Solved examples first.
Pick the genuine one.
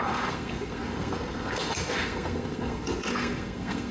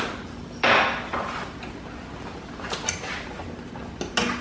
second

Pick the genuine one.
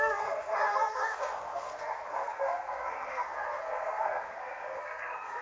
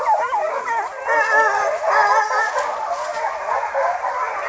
second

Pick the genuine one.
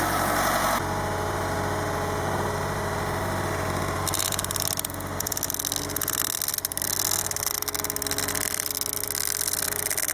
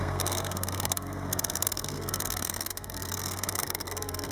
first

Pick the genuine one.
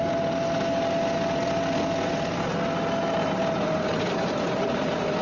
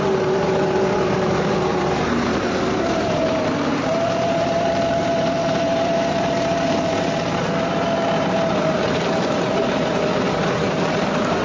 first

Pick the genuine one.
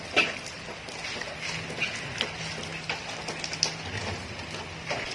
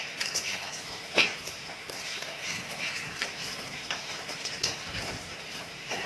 first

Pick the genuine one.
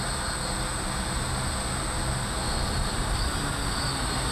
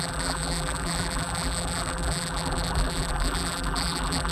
first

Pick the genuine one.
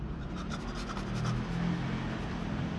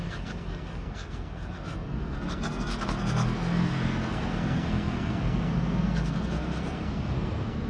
first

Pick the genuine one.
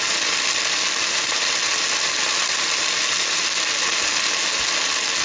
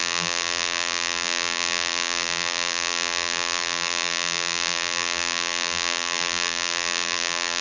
first